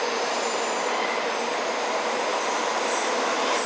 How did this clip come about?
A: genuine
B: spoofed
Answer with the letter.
A